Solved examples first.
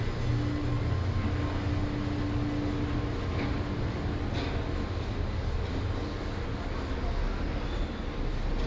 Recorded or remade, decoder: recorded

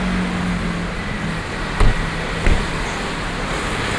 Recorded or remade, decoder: recorded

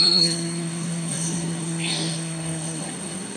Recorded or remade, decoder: remade, codec, SNAC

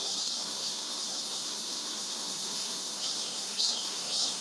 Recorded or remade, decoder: remade, codec, SNAC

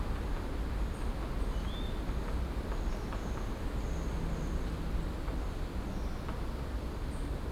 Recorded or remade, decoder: recorded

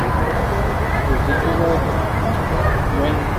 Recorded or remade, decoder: recorded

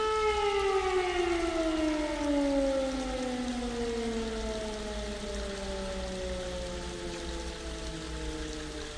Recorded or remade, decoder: recorded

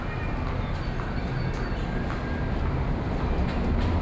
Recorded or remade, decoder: recorded